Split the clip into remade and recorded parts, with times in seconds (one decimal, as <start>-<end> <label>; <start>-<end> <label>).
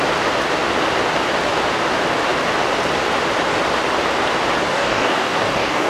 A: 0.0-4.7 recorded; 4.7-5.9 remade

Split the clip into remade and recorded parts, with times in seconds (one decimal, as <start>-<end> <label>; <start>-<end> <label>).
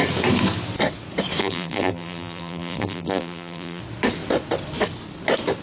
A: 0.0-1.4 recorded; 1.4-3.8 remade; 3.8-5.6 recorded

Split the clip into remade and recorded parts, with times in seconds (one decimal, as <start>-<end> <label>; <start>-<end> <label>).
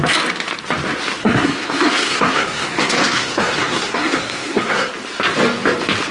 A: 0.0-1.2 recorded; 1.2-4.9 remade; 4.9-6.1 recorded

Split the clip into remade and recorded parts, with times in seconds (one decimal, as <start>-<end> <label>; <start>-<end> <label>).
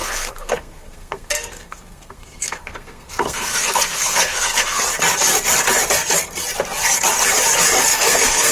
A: 0.0-4.8 remade; 4.8-7.9 recorded; 7.9-8.5 remade